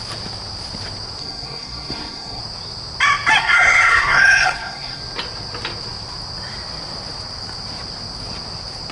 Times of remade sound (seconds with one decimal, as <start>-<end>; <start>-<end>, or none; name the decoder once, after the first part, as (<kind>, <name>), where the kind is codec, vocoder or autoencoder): 1.2-2.4 (codec, SNAC); 3.4-5.0